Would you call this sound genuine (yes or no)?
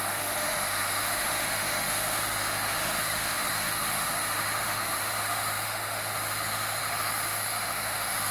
no